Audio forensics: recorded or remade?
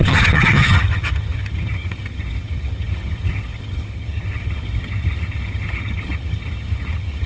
remade